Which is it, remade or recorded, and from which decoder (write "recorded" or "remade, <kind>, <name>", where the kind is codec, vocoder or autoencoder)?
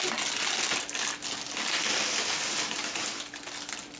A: recorded